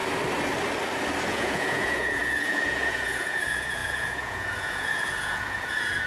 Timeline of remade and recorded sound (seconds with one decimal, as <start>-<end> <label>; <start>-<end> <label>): 0.0-1.3 recorded; 1.3-6.1 remade